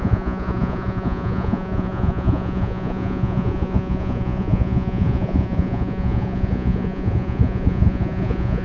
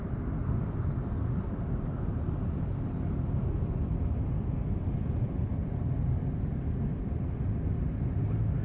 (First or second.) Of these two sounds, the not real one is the first